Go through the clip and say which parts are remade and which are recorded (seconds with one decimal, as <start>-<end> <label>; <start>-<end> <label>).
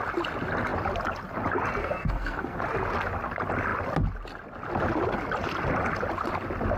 0.0-1.8 recorded; 1.8-2.6 remade; 2.6-6.8 recorded